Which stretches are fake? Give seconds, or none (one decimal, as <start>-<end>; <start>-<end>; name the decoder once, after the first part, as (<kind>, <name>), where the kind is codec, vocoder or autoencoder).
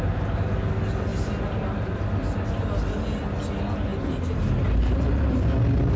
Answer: none